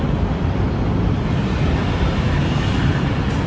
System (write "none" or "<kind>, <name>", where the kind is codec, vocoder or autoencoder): none